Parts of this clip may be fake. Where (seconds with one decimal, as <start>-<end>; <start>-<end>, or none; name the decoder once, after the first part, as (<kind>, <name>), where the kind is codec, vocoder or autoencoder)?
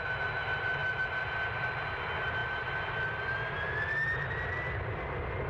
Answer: none